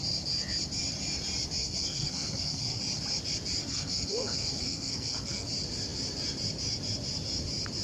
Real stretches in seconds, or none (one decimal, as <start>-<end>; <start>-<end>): 0.0-1.6; 2.8-3.6; 5.5-7.8